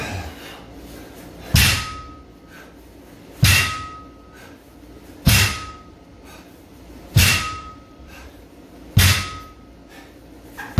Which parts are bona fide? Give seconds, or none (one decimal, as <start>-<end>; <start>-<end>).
0.0-6.1; 8.4-10.8